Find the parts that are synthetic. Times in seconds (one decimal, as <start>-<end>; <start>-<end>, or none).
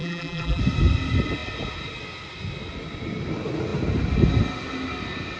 0.0-0.6